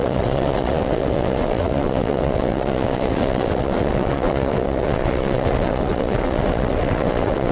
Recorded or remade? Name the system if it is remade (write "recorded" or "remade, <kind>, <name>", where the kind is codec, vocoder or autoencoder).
remade, vocoder, WaveNeXt